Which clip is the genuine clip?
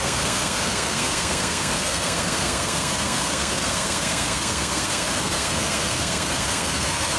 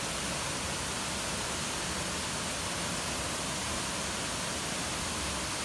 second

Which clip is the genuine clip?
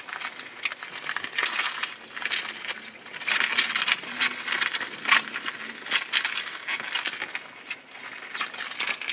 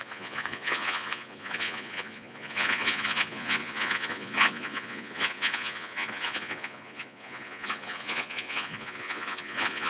first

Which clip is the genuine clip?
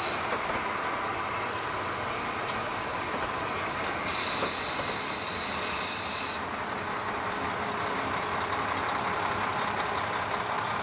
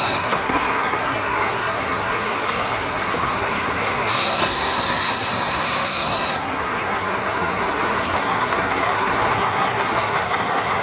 first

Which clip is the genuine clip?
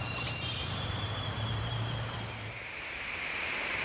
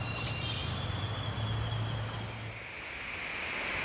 second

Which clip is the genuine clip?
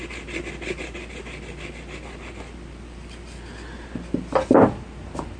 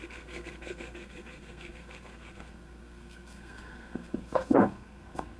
first